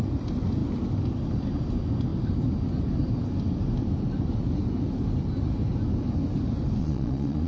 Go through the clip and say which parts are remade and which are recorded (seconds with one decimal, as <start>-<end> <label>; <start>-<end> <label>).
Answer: 0.0-6.8 recorded; 6.8-7.5 remade